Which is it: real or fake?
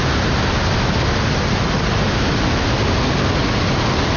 real